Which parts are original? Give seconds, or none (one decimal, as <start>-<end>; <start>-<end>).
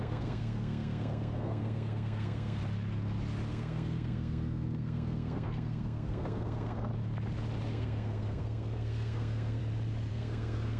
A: 2.6-3.5; 6.9-7.7; 9.6-10.1